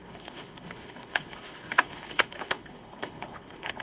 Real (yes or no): no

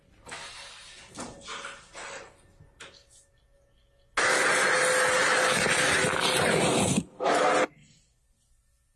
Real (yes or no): yes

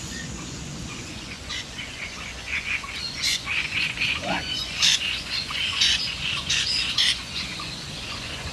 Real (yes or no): no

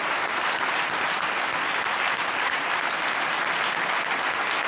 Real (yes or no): yes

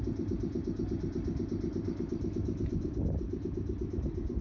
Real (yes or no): yes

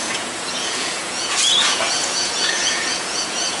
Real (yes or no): no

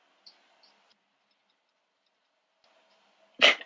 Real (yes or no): yes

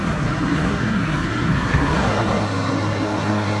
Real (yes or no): no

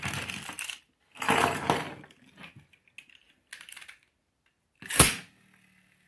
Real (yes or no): yes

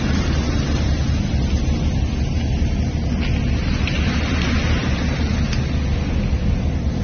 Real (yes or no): yes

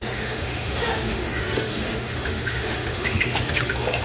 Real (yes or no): no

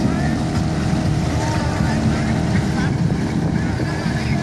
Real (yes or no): yes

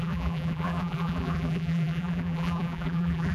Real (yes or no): no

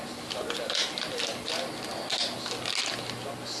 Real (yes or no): yes